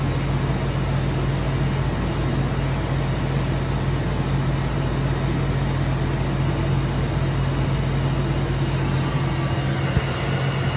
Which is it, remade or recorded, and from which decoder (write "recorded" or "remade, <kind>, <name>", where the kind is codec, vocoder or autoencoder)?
recorded